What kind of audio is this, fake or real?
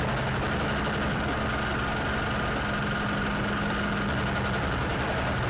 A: real